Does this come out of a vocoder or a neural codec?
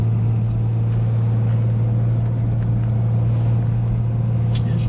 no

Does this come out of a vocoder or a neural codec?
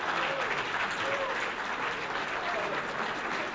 no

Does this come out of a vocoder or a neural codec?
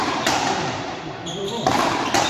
yes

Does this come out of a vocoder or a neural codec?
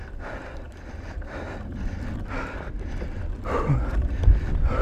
no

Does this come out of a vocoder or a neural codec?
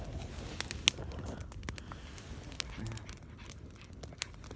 no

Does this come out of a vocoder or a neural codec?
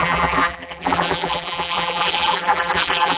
yes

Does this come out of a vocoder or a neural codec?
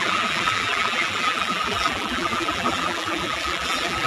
yes